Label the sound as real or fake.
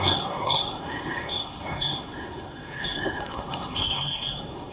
fake